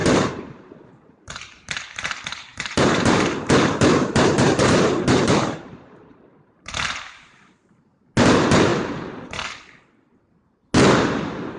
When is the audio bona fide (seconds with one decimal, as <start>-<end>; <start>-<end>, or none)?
1.8-2.5; 3.1-3.9; 7.9-11.6